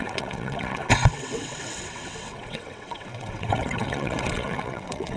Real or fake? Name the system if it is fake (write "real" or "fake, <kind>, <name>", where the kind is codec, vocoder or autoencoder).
fake, vocoder, WaveNeXt